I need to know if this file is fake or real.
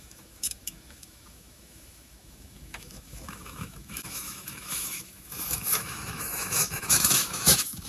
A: fake